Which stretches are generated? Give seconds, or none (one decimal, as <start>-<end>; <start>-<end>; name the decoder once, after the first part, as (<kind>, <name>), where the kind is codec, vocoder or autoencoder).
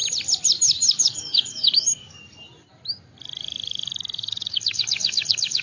1.0-2.2 (codec, DAC); 4.3-5.6